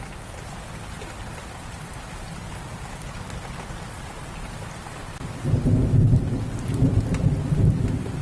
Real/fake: real